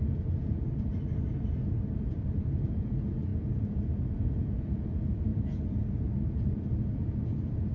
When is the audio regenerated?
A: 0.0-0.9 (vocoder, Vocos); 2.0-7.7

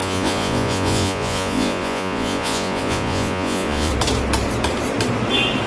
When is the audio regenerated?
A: 0.0-3.9 (vocoder, Vocos)

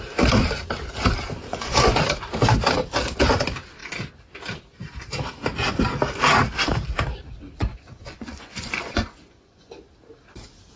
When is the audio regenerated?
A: 1.5-2.0 (vocoder, Vocos); 7.7-9.7